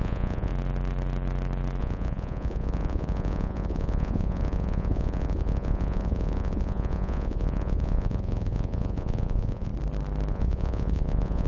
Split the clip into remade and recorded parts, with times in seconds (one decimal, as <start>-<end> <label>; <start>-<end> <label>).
0.0-0.5 remade; 0.5-1.8 recorded; 1.8-9.7 remade; 9.7-10.3 recorded; 10.3-11.5 remade